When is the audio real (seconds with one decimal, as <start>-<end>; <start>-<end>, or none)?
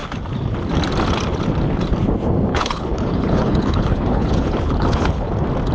0.0-2.5; 5.3-5.7